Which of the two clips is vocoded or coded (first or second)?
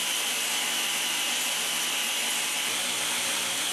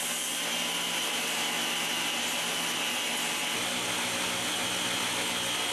first